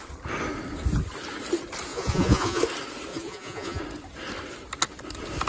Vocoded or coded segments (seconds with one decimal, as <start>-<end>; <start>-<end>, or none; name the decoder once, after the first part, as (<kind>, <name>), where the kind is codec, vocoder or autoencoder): 1.9-2.6 (vocoder, Vocos); 3.1-3.8